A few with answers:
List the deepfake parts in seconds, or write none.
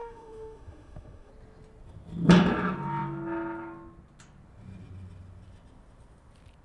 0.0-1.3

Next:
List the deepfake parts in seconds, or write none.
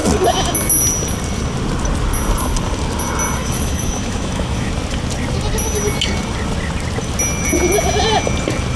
3.4-4.7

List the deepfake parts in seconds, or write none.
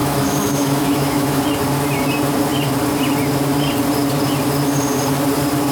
0.0-1.4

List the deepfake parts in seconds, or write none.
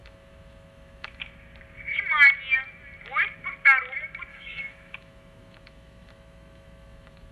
0.0-1.3; 4.3-7.3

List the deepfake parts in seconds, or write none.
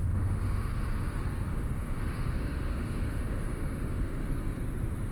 0.0-0.8; 1.5-4.3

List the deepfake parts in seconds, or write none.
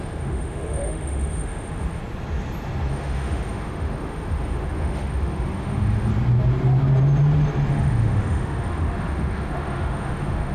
0.0-2.0; 2.9-6.1; 7.7-10.5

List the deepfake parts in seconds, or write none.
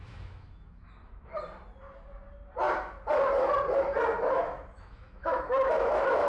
0.0-1.3; 4.3-6.3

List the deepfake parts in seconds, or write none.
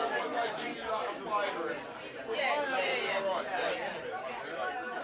0.0-0.7; 2.4-2.9